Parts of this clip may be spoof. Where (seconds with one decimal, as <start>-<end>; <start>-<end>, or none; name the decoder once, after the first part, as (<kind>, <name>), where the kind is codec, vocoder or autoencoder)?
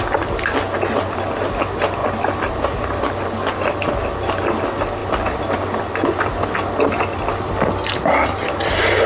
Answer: none